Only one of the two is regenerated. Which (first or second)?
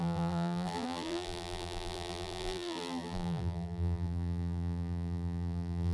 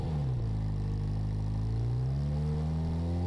first